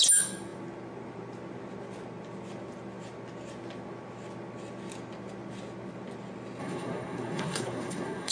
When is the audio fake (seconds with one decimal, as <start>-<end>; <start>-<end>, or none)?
6.6-8.3